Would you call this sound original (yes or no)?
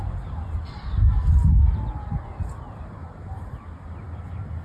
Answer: yes